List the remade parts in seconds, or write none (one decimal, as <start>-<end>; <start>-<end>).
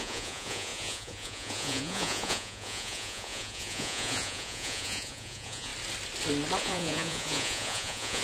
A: 0.0-5.7; 6.6-8.2